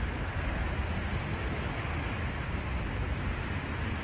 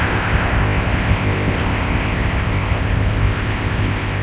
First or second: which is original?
first